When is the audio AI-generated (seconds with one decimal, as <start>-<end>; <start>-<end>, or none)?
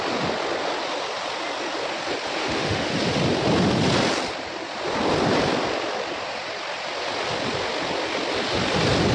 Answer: 2.4-2.9